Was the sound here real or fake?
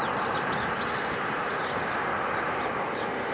real